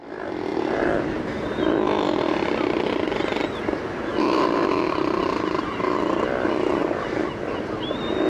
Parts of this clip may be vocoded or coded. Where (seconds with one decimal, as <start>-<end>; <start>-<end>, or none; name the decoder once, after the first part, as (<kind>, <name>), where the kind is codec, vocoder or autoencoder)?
4.1-5.2 (vocoder, BigVGAN v2)